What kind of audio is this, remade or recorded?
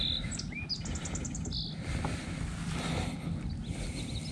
recorded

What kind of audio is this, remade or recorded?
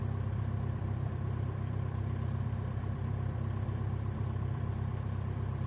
remade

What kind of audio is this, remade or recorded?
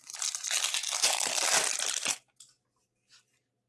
recorded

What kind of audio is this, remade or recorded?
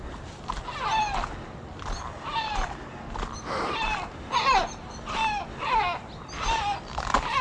recorded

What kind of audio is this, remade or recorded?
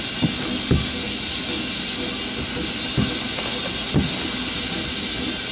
recorded